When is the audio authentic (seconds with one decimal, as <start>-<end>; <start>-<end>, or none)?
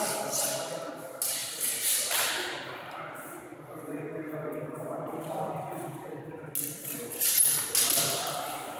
0.0-8.8